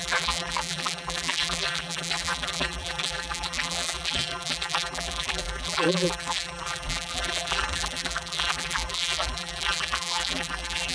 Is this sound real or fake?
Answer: fake